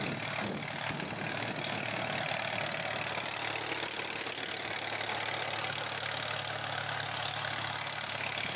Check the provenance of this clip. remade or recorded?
recorded